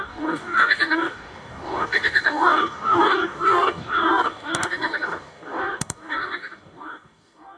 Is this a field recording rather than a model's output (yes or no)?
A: no